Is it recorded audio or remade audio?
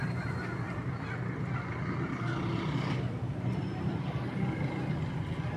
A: recorded